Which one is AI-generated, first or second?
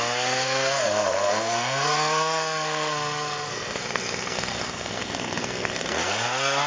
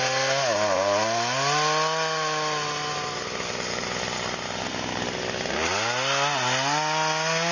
first